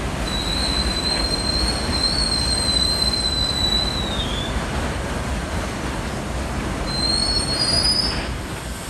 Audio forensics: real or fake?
real